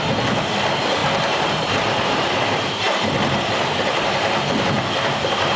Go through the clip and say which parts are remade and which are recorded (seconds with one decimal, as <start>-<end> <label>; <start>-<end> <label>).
0.0-1.0 recorded; 1.0-4.4 remade; 4.4-5.6 recorded

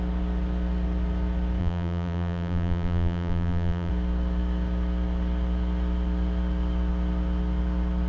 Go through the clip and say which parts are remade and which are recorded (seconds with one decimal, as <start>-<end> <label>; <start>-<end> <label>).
0.0-1.6 recorded; 1.6-3.9 remade; 3.9-8.1 recorded

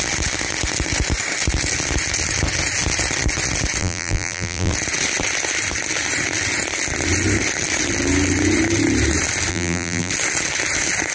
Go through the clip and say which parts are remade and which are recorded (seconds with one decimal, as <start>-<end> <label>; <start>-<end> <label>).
0.0-3.8 recorded; 3.8-4.7 remade; 4.7-9.5 recorded; 9.5-10.1 remade; 10.1-11.1 recorded

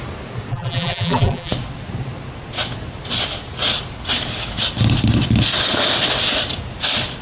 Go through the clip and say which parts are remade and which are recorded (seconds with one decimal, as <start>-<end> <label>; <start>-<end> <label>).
0.0-0.5 recorded; 0.5-1.5 remade; 1.5-7.2 recorded

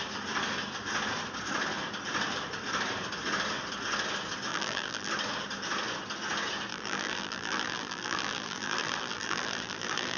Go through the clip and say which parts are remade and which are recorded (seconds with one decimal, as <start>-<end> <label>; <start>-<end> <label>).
0.0-4.5 recorded; 4.5-5.1 remade; 5.1-6.7 recorded; 6.7-10.2 remade

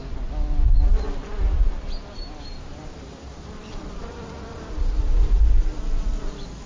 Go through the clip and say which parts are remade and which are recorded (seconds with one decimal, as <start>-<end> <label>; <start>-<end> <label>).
0.0-2.0 recorded; 2.0-5.8 remade; 5.8-6.7 recorded

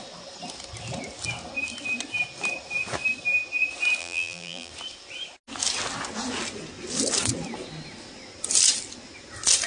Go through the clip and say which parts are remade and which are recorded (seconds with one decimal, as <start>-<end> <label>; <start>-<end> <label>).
0.0-4.0 recorded; 4.0-4.7 remade; 4.7-9.7 recorded